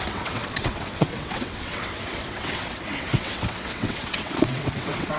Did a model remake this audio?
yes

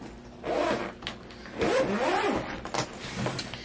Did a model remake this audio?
no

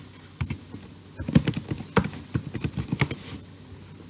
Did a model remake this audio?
no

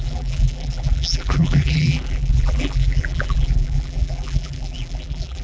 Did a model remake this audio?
yes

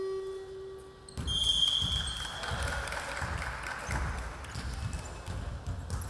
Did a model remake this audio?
no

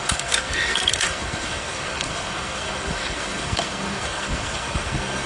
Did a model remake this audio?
yes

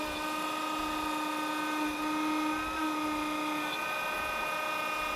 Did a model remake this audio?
no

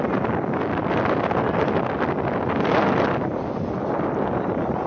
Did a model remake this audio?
no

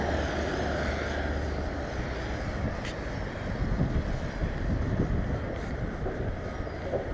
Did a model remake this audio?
no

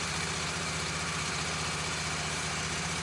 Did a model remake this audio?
yes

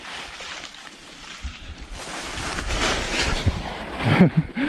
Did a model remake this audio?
yes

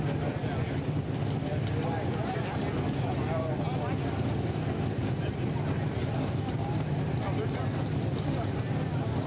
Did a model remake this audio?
no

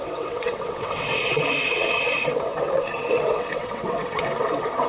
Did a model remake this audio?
yes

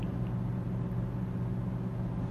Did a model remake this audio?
no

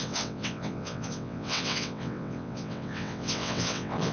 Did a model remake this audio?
yes